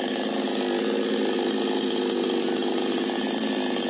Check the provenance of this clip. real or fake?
real